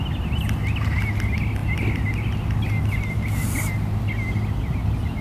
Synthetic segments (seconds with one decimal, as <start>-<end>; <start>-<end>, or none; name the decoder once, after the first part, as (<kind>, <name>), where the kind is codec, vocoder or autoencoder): none